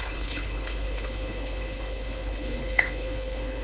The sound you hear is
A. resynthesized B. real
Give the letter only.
A